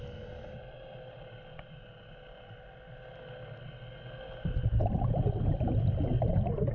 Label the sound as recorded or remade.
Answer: recorded